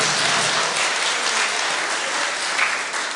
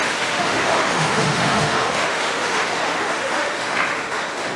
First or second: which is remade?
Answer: second